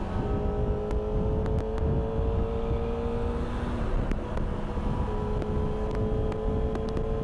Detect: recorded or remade recorded